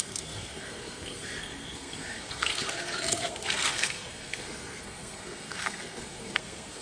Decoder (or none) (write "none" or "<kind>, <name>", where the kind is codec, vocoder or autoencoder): codec, SNAC